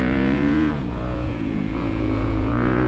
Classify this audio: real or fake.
fake